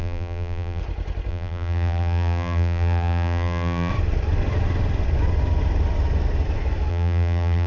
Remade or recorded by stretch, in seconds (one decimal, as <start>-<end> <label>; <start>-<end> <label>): 0.0-0.8 remade; 0.8-1.3 recorded; 1.3-3.9 remade; 3.9-6.9 recorded; 6.9-7.7 remade